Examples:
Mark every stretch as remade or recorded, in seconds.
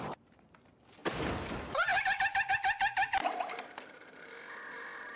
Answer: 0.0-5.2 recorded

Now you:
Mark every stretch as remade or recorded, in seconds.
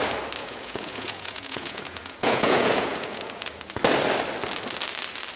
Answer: 0.0-0.4 recorded; 0.4-3.6 remade; 3.6-5.4 recorded